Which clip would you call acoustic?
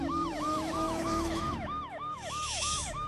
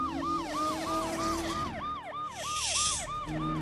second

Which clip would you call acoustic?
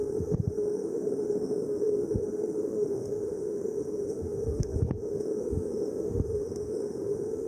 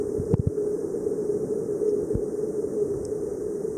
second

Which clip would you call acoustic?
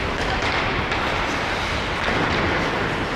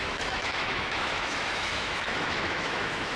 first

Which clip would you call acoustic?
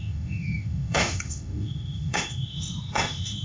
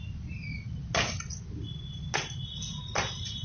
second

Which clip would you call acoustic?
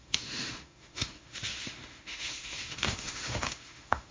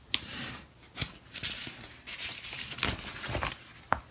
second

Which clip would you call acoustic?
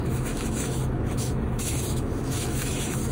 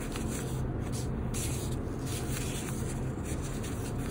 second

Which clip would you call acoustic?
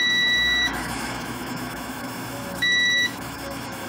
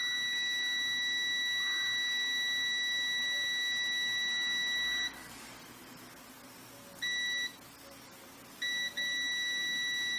second